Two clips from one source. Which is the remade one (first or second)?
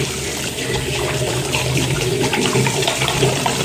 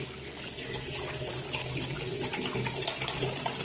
first